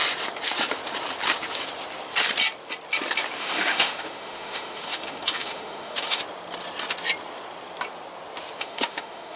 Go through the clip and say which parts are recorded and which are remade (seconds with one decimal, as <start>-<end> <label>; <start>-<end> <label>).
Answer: 0.0-3.4 recorded; 3.4-6.2 remade; 6.2-8.6 recorded; 8.6-9.4 remade